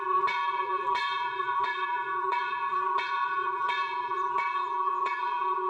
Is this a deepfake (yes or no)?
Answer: yes